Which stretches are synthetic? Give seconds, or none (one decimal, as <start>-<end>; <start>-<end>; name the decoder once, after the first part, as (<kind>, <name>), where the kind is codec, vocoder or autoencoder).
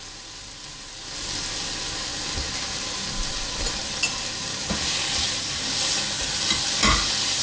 none